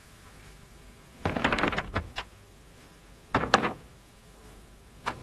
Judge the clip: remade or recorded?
recorded